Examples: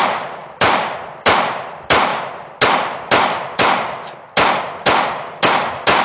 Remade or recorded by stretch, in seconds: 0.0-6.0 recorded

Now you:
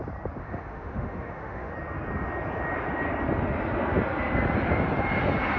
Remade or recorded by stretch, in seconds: 0.0-0.4 recorded; 0.4-1.7 remade; 1.7-5.6 recorded

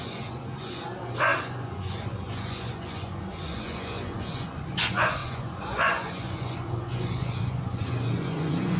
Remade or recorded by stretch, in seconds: 0.0-8.8 remade

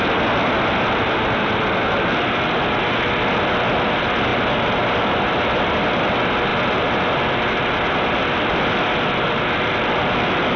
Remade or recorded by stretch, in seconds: 0.0-10.6 recorded

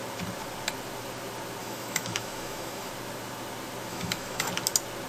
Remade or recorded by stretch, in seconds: 0.0-1.6 recorded; 1.6-2.9 remade; 2.9-3.9 recorded; 3.9-4.5 remade; 4.5-5.1 recorded